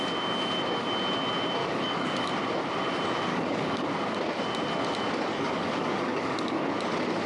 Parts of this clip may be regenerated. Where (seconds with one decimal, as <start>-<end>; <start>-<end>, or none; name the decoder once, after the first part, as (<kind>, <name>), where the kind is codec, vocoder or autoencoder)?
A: 1.6-2.3 (codec, DAC); 3.3-3.9; 5.3-6.7